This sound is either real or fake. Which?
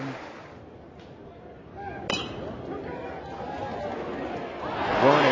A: real